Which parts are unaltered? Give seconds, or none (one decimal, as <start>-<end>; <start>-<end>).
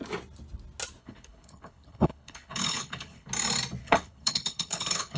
0.0-1.0; 3.3-3.8